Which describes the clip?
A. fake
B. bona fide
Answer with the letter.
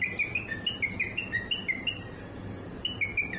B